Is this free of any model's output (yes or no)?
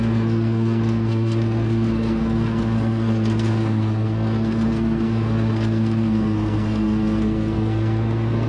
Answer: no